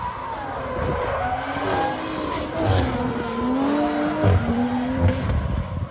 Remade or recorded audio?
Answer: recorded